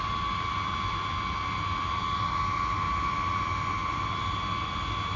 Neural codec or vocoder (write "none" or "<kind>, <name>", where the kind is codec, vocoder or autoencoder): none